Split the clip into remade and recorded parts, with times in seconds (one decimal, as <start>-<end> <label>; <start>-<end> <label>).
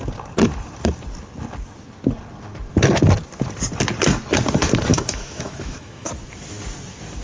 0.0-4.9 recorded; 4.9-6.1 remade; 6.1-7.2 recorded